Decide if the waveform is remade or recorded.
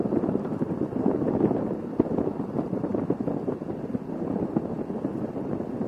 recorded